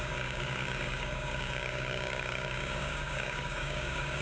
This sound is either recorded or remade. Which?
remade